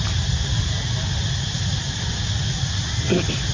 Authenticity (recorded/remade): recorded